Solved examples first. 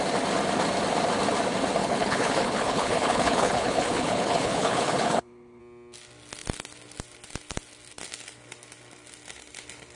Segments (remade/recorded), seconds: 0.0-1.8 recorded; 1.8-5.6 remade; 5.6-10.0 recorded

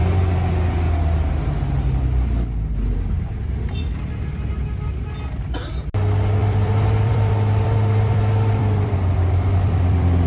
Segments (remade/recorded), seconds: 0.0-6.4 recorded; 6.4-10.3 remade